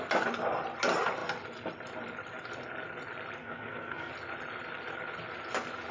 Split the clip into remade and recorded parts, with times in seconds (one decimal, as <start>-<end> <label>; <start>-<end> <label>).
0.0-3.4 recorded; 3.4-4.1 remade; 4.1-5.9 recorded